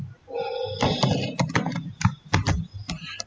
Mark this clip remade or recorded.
recorded